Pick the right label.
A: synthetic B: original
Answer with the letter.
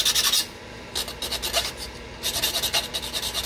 B